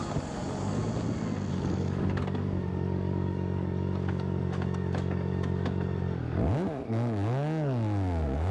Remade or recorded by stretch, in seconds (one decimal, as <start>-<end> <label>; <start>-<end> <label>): 0.0-0.8 remade; 0.8-1.5 recorded; 1.5-8.5 remade